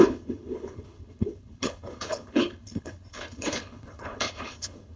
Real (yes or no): no